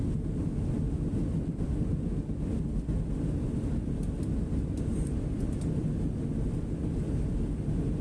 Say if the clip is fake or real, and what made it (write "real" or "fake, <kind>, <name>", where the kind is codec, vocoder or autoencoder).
real